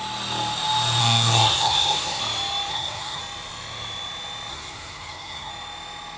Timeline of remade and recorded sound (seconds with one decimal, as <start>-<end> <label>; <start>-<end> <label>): 0.0-1.0 recorded; 1.0-2.2 remade; 2.2-2.7 recorded; 2.7-3.2 remade; 3.2-4.5 recorded; 4.5-5.5 remade; 5.5-6.2 recorded